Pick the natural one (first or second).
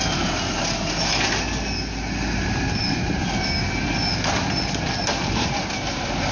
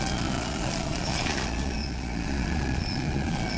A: first